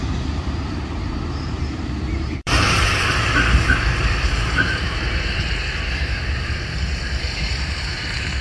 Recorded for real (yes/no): no